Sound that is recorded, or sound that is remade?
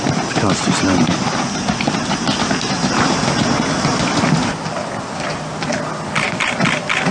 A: recorded